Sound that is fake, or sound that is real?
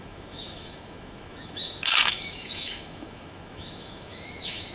fake